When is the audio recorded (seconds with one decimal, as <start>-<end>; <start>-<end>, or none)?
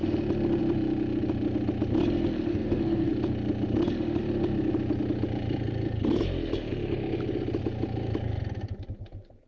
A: 0.0-2.5; 3.1-9.5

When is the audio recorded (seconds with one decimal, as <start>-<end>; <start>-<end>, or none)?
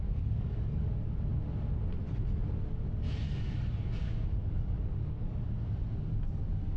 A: 0.9-4.4; 5.4-6.8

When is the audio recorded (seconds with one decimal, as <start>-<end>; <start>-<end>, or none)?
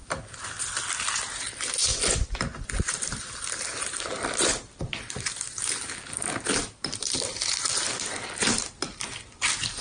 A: 0.0-9.8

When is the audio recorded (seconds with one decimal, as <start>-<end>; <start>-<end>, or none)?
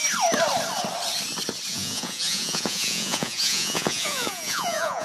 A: 0.0-1.7